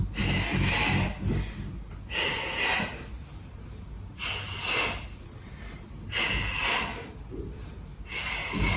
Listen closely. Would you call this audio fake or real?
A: real